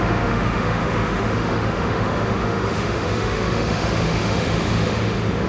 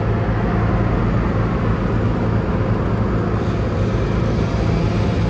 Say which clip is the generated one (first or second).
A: first